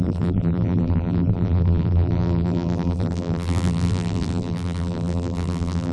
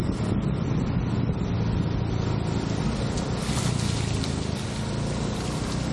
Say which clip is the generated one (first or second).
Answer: first